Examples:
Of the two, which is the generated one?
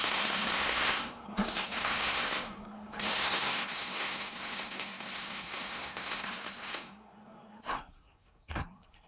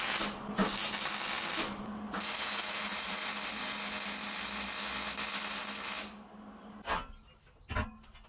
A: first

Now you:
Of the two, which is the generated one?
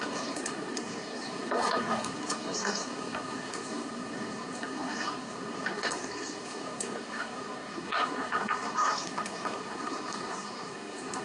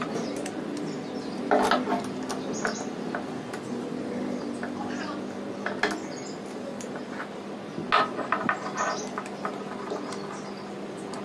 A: first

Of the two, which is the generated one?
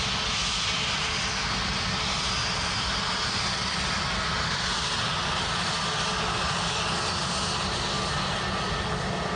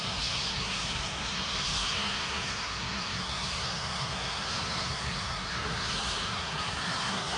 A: second